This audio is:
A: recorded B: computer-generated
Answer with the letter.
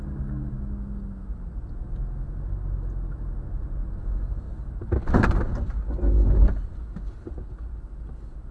A